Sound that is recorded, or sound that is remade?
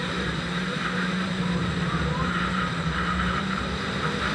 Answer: remade